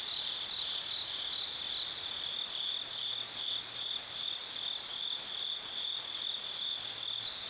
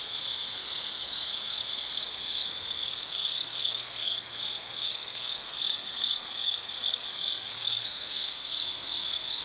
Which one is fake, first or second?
second